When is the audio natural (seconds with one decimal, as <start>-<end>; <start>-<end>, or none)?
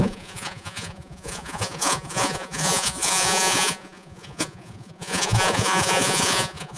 none